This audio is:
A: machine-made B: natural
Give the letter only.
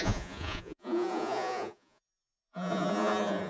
A